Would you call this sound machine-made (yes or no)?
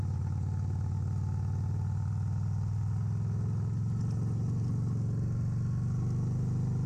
no